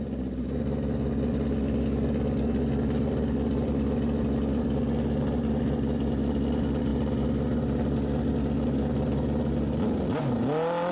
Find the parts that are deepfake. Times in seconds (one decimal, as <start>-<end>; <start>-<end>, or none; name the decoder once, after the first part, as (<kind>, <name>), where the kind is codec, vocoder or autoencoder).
none